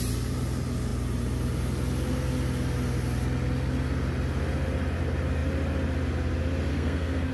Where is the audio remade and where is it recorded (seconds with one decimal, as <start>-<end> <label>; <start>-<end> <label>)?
0.0-6.7 recorded; 6.7-7.3 remade

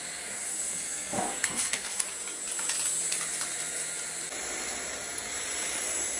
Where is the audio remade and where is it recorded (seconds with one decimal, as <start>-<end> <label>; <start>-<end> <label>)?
0.0-0.5 recorded; 0.5-2.0 remade; 2.0-6.2 recorded

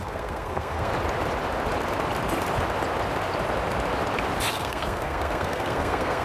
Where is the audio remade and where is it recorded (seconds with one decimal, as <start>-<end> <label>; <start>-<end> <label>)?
0.0-0.9 remade; 0.9-4.5 recorded; 4.5-6.2 remade

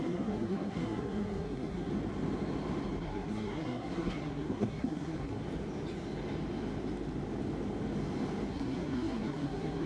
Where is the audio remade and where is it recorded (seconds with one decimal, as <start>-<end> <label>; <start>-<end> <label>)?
0.0-1.9 remade; 1.9-3.0 recorded; 3.0-5.4 remade; 5.4-8.5 recorded; 8.5-9.9 remade

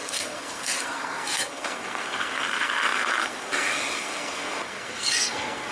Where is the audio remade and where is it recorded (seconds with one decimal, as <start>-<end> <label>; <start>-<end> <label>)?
0.0-5.7 remade